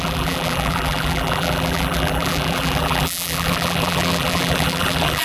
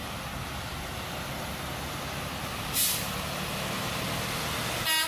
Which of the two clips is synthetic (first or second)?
first